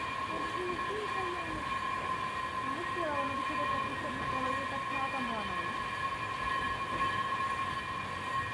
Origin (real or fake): real